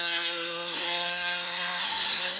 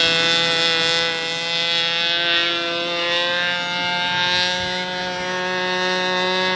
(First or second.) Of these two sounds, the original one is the second